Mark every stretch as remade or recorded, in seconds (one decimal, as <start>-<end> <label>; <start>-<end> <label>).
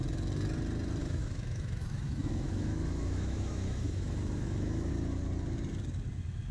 0.0-1.0 recorded; 1.0-4.9 remade; 4.9-6.5 recorded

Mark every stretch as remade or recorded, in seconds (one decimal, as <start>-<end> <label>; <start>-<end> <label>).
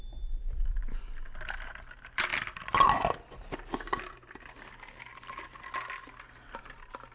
0.0-0.8 remade; 0.8-1.5 recorded; 1.5-2.3 remade; 2.3-6.6 recorded; 6.6-7.1 remade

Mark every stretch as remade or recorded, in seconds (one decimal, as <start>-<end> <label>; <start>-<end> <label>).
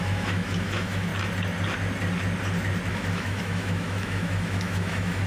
0.0-1.1 remade; 1.1-2.9 recorded; 2.9-5.3 remade